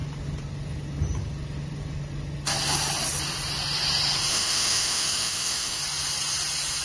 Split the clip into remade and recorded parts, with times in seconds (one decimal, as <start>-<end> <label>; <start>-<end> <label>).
0.0-4.3 recorded; 4.3-5.8 remade; 5.8-6.8 recorded